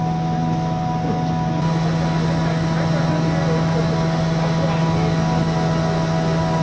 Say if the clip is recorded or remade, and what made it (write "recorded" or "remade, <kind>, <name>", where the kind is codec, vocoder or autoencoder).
recorded